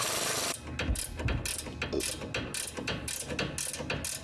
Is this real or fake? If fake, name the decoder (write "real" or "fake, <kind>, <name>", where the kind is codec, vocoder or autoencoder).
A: real